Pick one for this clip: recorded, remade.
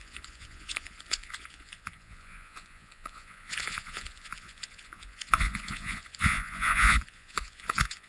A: remade